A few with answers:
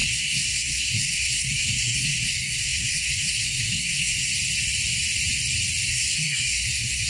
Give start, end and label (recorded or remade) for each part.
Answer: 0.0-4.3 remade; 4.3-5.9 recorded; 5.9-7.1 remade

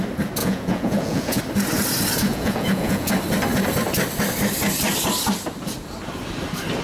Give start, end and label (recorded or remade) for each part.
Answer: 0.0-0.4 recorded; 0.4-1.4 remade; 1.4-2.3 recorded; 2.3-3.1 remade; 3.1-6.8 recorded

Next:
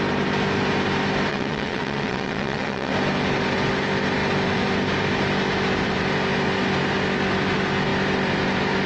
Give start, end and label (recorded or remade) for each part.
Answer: 0.0-1.3 recorded; 1.3-2.9 remade; 2.9-8.9 recorded

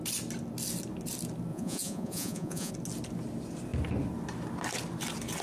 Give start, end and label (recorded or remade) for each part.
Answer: 0.0-1.5 recorded; 1.5-2.7 remade; 2.7-5.4 recorded